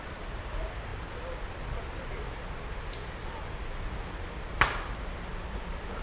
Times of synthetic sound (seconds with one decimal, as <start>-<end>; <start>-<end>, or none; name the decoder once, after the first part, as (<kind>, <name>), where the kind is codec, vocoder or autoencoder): none